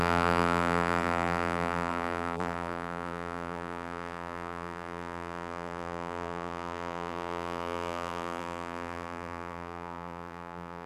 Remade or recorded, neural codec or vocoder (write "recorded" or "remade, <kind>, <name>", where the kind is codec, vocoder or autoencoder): remade, vocoder, BigVGAN v2